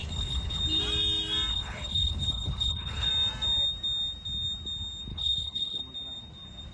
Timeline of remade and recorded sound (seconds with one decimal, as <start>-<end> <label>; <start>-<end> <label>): 0.0-0.6 remade; 0.6-1.5 recorded; 1.5-3.1 remade; 3.1-5.1 recorded; 5.1-5.8 remade; 5.8-6.7 recorded